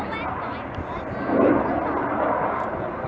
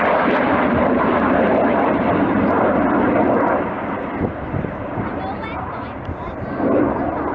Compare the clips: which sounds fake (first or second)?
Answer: second